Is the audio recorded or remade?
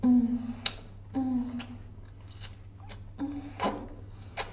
recorded